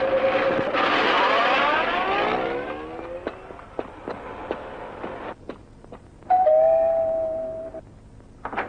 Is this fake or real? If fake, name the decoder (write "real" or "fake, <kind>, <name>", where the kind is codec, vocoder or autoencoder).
real